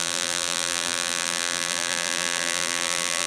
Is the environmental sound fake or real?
fake